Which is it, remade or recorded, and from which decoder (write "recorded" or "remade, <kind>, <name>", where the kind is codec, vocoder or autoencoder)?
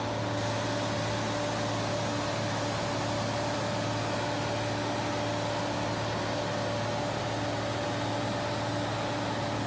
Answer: recorded